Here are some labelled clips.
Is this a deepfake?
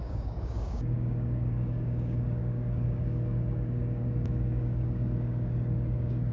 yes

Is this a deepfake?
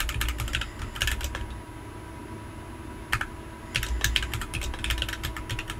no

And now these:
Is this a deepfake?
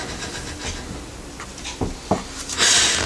no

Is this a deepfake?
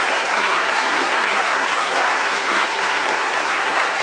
yes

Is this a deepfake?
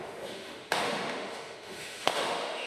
yes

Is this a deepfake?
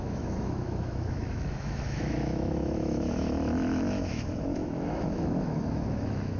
yes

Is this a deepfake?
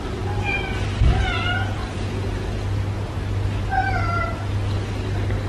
no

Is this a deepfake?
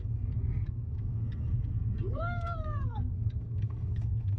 yes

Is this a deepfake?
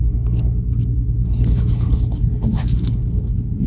yes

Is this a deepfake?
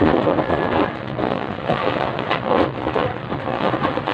yes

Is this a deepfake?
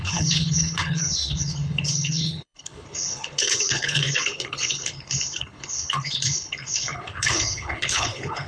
yes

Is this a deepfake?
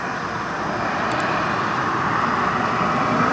no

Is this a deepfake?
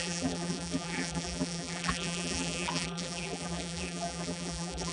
yes